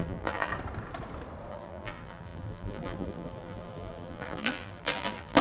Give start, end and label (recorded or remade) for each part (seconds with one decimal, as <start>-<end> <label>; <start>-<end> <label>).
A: 0.0-0.5 remade; 0.5-1.5 recorded; 1.5-5.4 remade